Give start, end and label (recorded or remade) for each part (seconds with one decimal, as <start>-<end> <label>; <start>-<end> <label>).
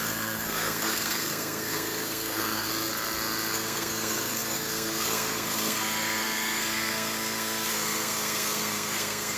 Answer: 0.0-2.7 remade; 2.7-3.5 recorded; 3.5-9.4 remade